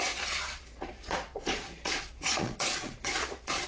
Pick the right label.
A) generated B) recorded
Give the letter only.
A